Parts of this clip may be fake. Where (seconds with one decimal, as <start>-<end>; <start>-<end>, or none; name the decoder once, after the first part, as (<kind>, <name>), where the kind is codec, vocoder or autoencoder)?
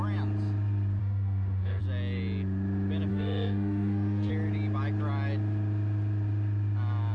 1.0-1.8 (autoencoder, DAC-VAE); 3.1-4.3